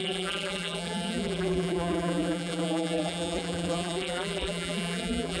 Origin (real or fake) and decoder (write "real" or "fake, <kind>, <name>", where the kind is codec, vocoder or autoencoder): fake, vocoder, BigVGAN v2